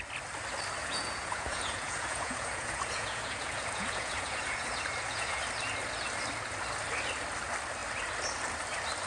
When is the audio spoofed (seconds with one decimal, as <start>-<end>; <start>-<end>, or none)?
0.8-5.4